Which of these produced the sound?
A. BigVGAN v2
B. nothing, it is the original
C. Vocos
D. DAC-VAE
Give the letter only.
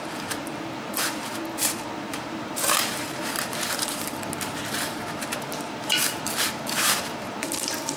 A